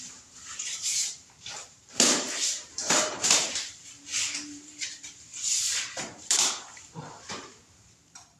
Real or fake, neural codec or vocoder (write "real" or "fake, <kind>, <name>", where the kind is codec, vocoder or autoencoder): fake, vocoder, BigVGAN v2